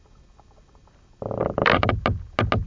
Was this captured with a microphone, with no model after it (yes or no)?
yes